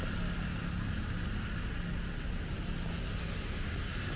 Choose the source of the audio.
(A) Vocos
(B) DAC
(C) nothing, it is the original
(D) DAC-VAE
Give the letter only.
C